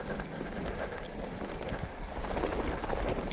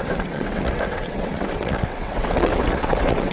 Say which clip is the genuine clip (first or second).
first